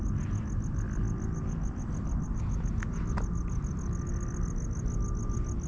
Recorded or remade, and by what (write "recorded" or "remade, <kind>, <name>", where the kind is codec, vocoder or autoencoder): recorded